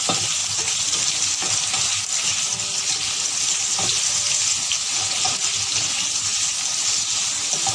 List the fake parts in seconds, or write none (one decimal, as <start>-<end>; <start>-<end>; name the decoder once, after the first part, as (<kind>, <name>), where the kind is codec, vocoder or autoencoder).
none